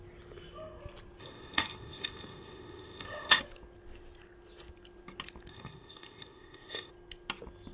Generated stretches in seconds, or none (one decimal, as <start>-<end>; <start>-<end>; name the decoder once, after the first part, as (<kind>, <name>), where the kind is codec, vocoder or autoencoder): 1.2-3.4 (codec, ZipCodec); 5.5-6.9